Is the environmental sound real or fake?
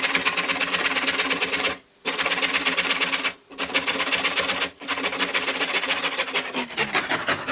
real